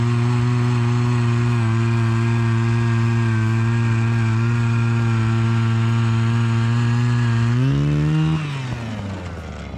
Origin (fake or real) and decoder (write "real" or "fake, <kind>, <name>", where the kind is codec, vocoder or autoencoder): real